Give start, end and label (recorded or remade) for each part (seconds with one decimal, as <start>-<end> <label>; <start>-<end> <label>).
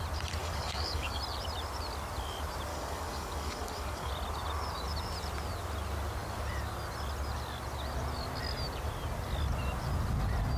0.0-0.4 recorded; 0.4-1.2 remade; 1.2-2.7 recorded; 2.7-4.1 remade; 4.1-10.6 recorded